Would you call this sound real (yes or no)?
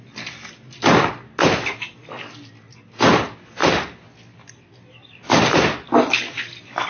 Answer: yes